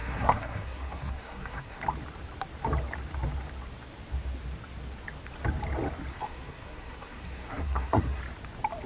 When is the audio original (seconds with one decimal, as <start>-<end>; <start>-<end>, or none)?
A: 1.8-6.1; 8.2-8.9